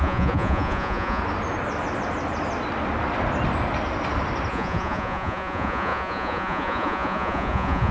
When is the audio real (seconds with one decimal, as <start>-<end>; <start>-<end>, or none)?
1.2-4.5